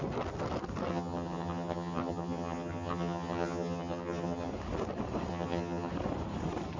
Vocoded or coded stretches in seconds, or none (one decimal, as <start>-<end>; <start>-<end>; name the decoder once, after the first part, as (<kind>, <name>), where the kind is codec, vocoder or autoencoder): 0.9-4.5 (vocoder, HiFi-GAN); 5.3-5.9